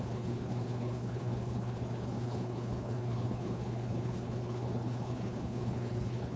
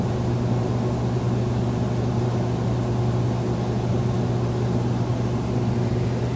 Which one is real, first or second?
second